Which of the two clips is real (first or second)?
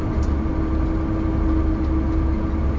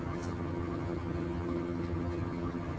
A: first